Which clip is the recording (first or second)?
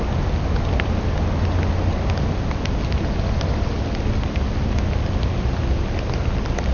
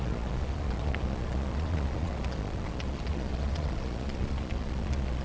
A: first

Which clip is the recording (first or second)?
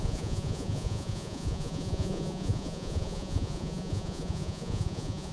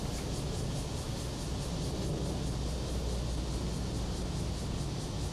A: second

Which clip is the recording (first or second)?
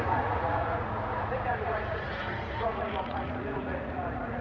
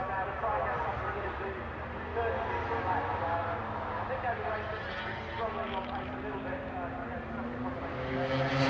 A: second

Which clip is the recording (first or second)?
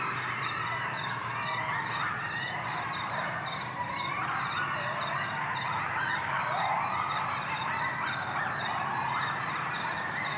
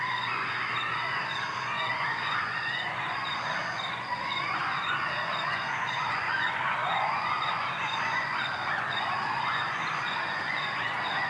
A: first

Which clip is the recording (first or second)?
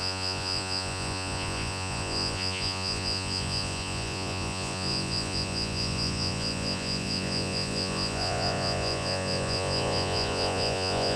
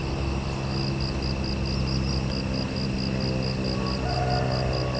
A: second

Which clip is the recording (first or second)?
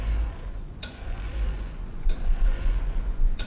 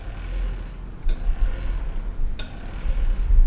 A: second